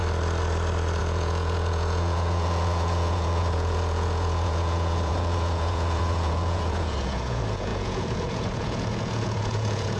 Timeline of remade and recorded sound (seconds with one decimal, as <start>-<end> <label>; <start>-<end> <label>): 0.0-1.0 recorded; 1.0-10.0 remade